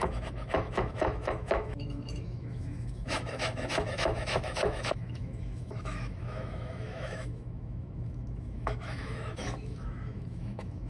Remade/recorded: remade